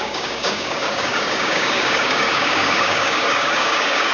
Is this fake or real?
fake